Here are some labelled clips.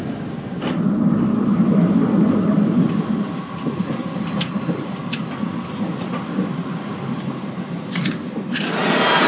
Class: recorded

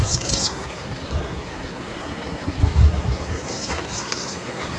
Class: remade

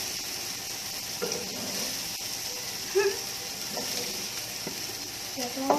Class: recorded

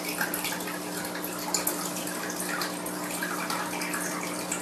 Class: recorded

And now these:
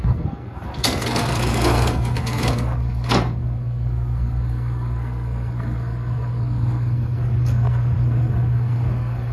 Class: remade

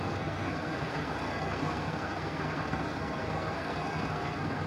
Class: remade